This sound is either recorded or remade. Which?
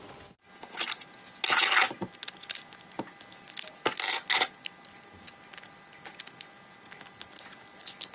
recorded